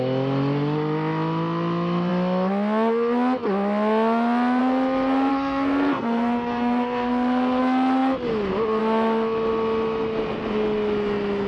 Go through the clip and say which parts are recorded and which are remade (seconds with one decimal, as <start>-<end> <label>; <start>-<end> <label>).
0.0-5.3 recorded; 5.3-7.6 remade; 7.6-11.5 recorded